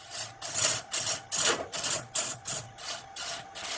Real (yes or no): yes